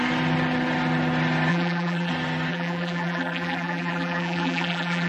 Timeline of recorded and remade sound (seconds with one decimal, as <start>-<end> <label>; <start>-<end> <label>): 0.0-1.5 recorded; 1.5-2.1 remade; 2.1-2.5 recorded; 2.5-5.1 remade

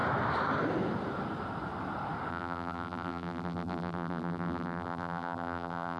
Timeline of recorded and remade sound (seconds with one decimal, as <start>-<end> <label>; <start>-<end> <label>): 0.0-2.3 recorded; 2.3-6.0 remade

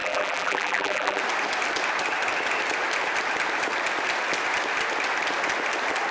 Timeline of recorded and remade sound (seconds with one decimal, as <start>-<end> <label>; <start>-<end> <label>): 0.0-1.2 remade; 1.2-6.1 recorded

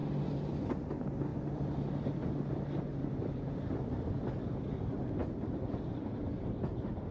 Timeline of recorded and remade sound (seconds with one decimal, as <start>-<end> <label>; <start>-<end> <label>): 0.0-1.3 recorded; 1.3-1.9 remade; 1.9-2.9 recorded; 2.9-3.8 remade; 3.8-5.2 recorded; 5.2-6.0 remade; 6.0-7.1 recorded

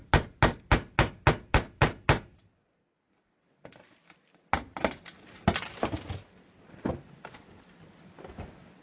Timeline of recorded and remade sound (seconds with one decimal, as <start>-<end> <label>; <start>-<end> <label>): 0.0-5.2 recorded; 5.2-5.7 remade; 5.7-6.8 recorded; 6.8-8.8 remade